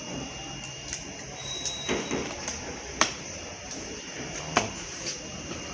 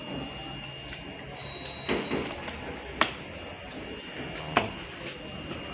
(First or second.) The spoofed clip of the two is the first